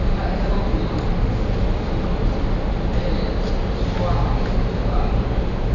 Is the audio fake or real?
real